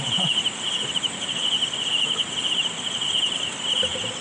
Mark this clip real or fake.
real